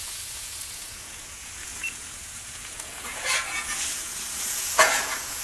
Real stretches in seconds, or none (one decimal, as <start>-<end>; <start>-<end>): none